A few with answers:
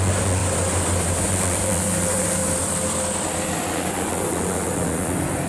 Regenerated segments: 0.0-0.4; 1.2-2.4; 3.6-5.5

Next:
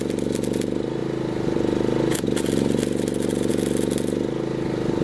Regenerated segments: none

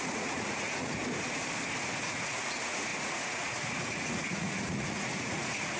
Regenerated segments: 0.0-1.0; 2.0-5.8